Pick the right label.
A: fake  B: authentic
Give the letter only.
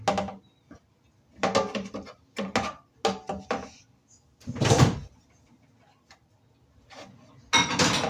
B